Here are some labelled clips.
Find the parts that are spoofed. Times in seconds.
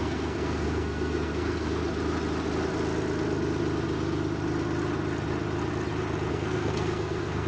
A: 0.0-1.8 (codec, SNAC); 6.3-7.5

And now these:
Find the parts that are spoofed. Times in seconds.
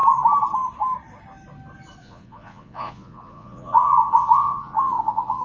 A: 2.0-5.4 (vocoder, Vocos)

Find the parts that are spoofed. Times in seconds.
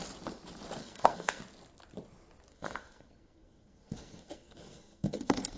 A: 0.8-1.4 (codec, SNAC); 2.5-5.6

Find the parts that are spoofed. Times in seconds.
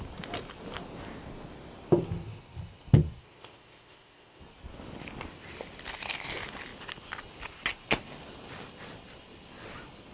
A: 3.2-4.4 (codec, ZipCodec)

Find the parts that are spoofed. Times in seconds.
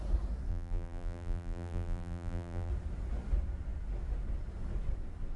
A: 0.5-2.7 (vocoder, BigVGAN v2)